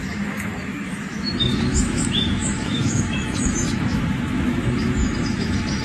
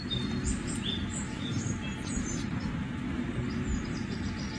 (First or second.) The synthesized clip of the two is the first